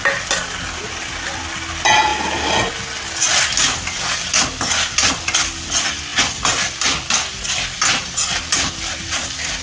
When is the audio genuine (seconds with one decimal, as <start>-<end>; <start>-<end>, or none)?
0.0-9.6